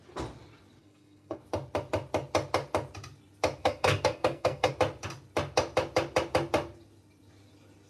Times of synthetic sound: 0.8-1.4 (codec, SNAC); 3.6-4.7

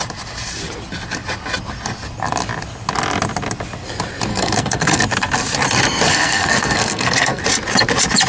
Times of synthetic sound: 4.3-5.0 (codec, SNAC); 6.1-7.4

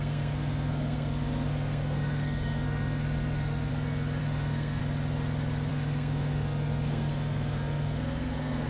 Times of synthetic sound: 0.0-3.7 (codec, SNAC); 4.2-4.8; 5.7-8.7

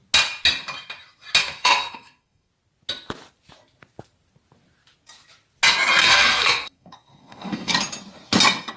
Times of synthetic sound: 1.4-2.5 (codec, SNAC); 6.0-7.7